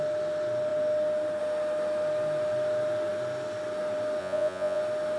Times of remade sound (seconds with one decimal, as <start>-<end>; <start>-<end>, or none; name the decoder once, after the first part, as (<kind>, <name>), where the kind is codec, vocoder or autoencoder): 4.2-4.8 (vocoder, Vocos)